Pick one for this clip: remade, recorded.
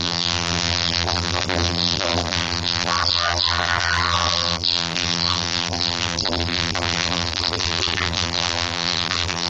remade